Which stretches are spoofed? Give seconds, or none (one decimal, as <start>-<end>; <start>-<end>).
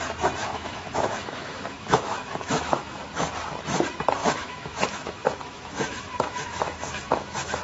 0.4-3.0; 4.2-7.6